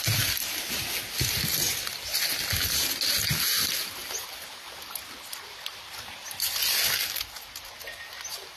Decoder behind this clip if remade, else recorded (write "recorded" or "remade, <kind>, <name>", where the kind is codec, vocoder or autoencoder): recorded